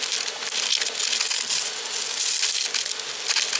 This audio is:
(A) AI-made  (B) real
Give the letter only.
B